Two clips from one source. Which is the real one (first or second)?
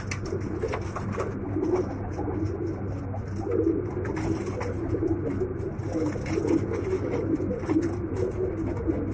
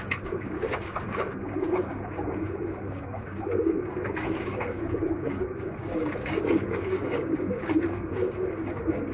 first